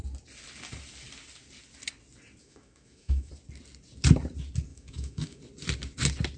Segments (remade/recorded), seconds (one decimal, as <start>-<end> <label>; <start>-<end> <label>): 0.0-2.4 recorded; 2.4-3.3 remade; 3.3-4.7 recorded; 4.7-5.4 remade; 5.4-6.4 recorded